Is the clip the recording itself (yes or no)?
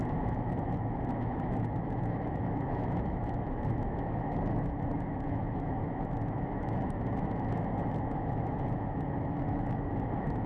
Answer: no